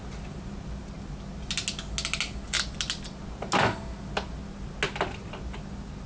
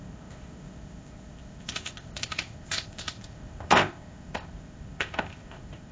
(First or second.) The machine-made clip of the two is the second